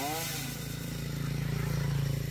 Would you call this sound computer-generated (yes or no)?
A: no